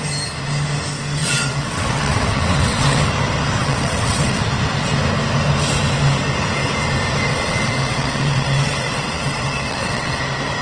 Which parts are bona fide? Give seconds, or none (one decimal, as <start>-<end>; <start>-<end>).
0.0-1.2; 3.1-3.6; 4.4-7.3; 10.2-10.6